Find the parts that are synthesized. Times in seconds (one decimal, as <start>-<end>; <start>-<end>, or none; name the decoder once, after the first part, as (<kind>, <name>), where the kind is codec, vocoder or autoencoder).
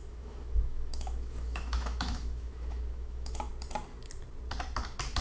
0.0-3.5 (autoencoder, DAC-VAE)